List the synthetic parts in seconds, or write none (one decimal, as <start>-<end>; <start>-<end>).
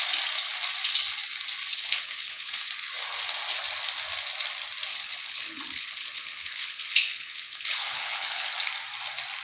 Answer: 1.7-2.7; 4.9-8.5